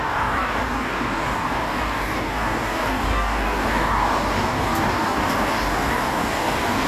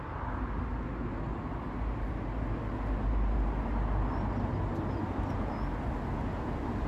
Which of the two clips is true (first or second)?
second